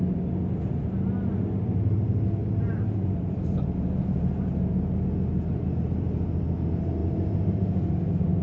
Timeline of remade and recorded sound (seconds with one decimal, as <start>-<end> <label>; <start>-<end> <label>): 0.0-2.4 recorded; 2.4-4.7 remade; 4.7-8.4 recorded